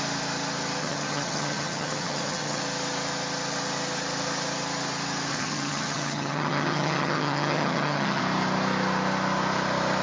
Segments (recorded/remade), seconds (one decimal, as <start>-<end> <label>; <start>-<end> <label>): 0.0-0.8 recorded; 0.8-2.6 remade; 2.6-5.3 recorded; 5.3-8.2 remade; 8.2-10.0 recorded